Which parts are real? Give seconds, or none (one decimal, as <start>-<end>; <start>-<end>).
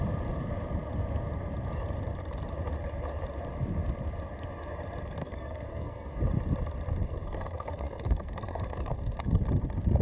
0.0-5.2; 6.2-7.0; 9.4-10.0